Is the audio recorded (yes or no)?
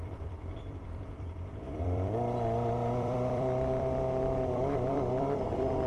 no